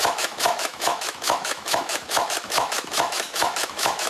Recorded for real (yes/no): no